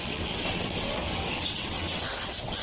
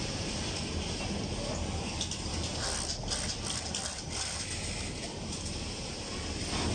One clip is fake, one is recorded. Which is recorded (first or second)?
second